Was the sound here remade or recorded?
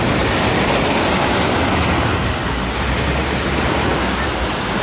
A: recorded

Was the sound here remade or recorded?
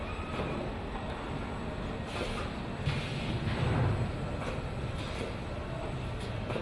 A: recorded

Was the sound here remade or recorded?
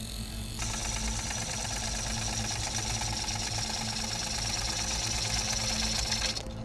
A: recorded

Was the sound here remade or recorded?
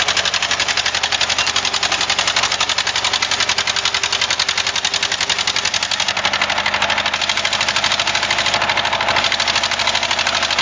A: recorded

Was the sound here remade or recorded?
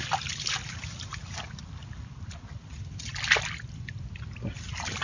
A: recorded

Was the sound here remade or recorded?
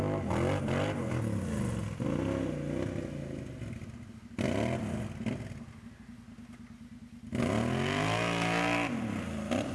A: recorded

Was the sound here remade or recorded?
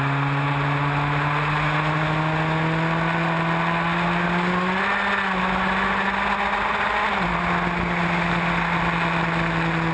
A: recorded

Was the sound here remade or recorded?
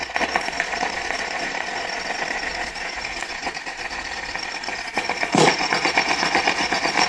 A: remade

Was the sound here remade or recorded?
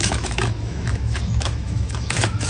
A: remade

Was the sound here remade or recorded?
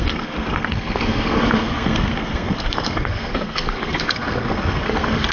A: remade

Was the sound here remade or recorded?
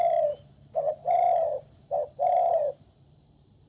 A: remade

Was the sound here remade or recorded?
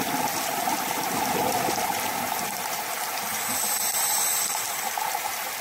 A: recorded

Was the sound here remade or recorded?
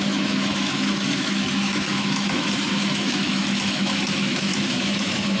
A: remade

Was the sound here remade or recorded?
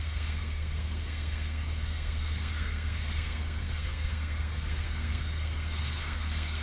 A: remade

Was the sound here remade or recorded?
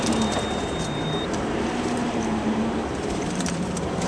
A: remade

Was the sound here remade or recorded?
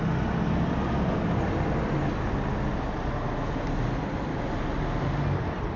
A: recorded